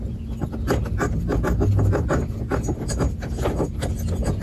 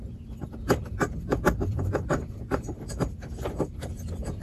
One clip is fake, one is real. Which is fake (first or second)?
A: second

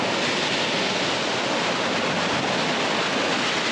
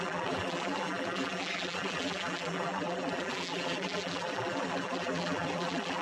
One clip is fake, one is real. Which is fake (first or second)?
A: second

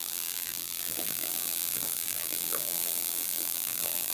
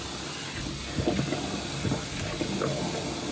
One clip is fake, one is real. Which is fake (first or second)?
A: first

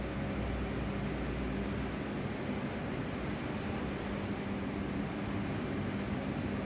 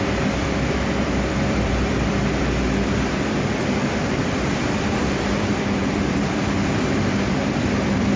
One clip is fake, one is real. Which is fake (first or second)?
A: second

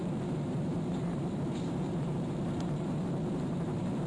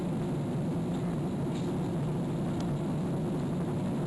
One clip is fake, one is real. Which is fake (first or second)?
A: first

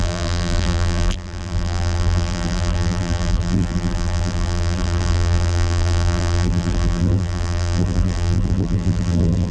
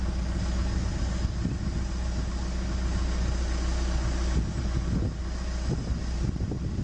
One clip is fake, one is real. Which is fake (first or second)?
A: first